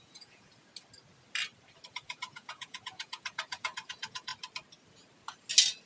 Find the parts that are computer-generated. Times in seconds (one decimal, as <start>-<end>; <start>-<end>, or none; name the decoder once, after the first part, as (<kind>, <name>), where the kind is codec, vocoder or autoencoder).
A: 0.0-0.5 (vocoder, Vocos); 1.9-4.3

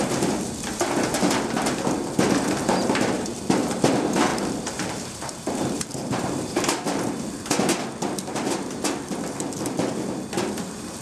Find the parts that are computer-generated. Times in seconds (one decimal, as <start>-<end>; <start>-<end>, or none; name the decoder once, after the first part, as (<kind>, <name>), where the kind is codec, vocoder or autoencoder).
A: 4.3-7.1 (vocoder, BigVGAN v2)

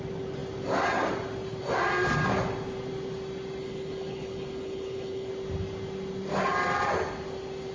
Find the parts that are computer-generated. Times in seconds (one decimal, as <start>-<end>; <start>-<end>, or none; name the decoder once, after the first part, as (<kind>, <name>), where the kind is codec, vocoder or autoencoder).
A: 3.6-5.3 (codec, HILCodec)

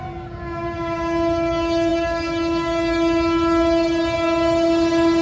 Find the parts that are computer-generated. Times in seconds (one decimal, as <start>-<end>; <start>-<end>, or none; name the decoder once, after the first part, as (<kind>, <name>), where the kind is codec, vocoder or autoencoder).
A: none

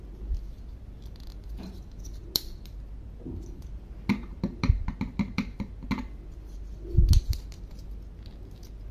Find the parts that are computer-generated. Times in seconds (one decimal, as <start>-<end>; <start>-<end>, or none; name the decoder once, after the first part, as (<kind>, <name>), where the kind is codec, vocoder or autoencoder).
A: none

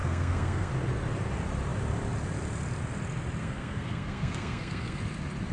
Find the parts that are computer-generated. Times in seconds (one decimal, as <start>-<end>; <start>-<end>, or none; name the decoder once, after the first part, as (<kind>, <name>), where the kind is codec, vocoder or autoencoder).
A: 0.0-0.7 (codec, SNAC); 3.4-5.0

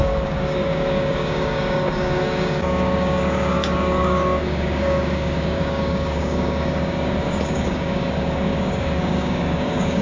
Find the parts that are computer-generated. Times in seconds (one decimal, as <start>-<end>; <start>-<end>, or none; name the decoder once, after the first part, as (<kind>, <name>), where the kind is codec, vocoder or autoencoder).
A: 0.0-10.0 (codec, DAC)

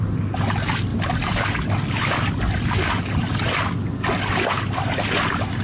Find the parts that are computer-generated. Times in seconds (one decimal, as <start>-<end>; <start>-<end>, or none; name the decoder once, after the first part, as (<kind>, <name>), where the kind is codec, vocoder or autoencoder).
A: 0.9-2.1 (vocoder, BigVGAN v2)